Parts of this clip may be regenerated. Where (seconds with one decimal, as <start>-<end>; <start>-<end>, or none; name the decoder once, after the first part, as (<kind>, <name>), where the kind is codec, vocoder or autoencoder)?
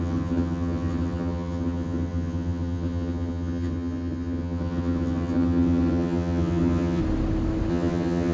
0.0-7.0 (vocoder, HiFi-GAN); 7.7-8.3